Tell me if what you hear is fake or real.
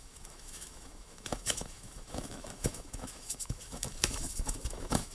fake